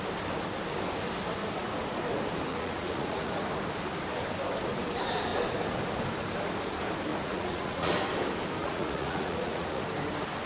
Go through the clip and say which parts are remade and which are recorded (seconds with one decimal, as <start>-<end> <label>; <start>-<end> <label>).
0.0-2.5 recorded; 2.5-3.3 remade; 3.3-7.1 recorded; 7.1-7.9 remade; 7.9-8.6 recorded; 8.6-9.8 remade; 9.8-10.5 recorded

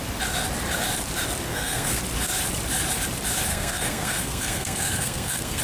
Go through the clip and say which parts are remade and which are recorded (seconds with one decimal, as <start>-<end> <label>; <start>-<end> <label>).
0.0-1.5 recorded; 1.5-2.0 remade; 2.0-3.5 recorded; 3.5-5.6 remade

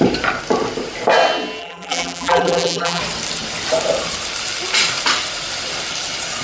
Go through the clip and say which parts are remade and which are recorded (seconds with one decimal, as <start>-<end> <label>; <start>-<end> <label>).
0.0-1.6 recorded; 1.6-3.0 remade; 3.0-6.4 recorded

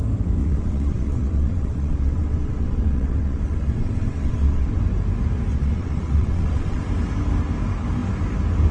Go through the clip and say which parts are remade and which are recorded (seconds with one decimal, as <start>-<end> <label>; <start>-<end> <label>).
0.0-0.4 recorded; 0.4-4.8 remade; 4.8-5.5 recorded; 5.5-6.8 remade; 6.8-8.7 recorded

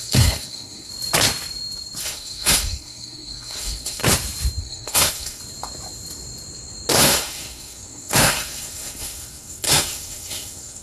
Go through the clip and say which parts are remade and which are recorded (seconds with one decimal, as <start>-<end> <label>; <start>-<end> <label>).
0.0-0.9 remade; 0.9-2.0 recorded; 2.0-4.0 remade; 4.0-4.6 recorded; 4.6-5.4 remade; 5.4-7.0 recorded; 7.0-10.8 remade